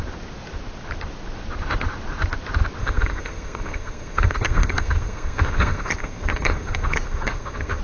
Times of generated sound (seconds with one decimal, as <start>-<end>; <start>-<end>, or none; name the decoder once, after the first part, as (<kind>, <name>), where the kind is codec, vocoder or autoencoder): 2.8-7.8 (codec, SNAC)